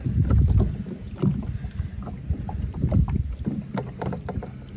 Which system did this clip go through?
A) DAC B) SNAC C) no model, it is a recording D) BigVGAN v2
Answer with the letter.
C